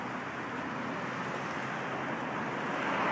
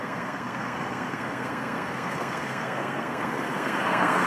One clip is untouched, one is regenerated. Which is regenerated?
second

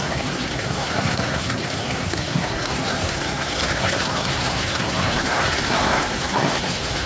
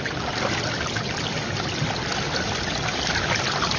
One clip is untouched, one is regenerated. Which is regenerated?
first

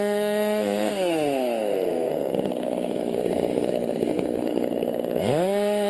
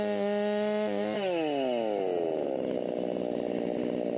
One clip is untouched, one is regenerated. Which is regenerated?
first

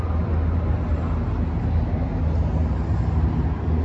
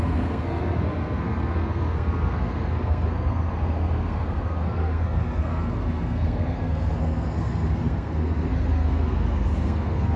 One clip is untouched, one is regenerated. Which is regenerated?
second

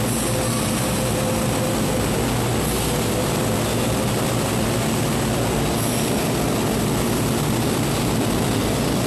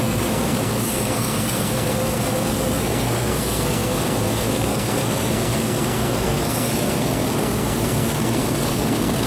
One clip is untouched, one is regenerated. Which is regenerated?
second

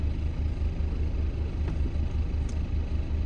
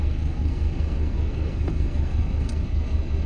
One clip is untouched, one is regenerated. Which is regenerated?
second